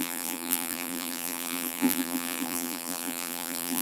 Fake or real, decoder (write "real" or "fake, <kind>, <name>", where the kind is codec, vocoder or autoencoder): fake, vocoder, BigVGAN v2